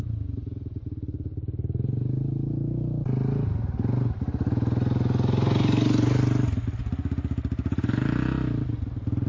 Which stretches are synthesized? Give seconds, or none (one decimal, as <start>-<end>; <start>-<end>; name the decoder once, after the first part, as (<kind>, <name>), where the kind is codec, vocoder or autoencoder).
none